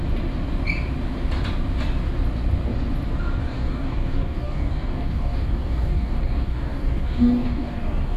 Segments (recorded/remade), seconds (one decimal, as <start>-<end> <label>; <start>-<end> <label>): 0.0-3.4 recorded; 3.4-8.2 remade